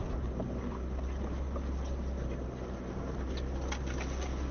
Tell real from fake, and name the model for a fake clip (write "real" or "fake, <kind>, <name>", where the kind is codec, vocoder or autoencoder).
real